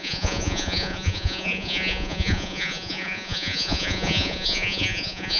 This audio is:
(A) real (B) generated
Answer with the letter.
B